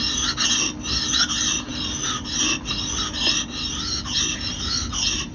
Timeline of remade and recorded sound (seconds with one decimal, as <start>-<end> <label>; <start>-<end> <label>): 0.0-5.3 recorded